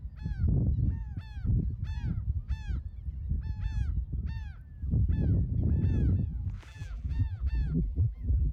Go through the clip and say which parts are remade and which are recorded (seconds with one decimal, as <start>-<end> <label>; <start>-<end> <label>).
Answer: 0.0-6.7 recorded; 6.7-8.5 remade